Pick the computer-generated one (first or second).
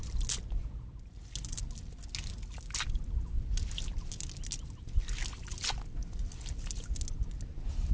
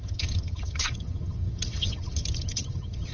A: second